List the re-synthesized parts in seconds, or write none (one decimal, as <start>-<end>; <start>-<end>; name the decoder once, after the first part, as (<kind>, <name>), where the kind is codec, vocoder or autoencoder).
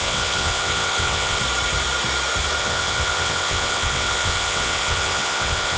0.0-1.4 (vocoder, WaveNeXt); 2.6-5.8